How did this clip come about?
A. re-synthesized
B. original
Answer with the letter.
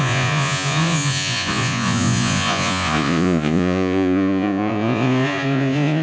A